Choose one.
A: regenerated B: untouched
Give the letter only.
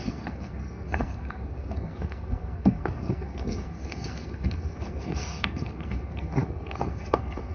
A